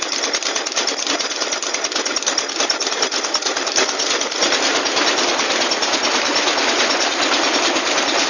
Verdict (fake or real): real